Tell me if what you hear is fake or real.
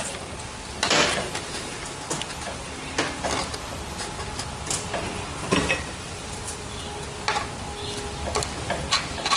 real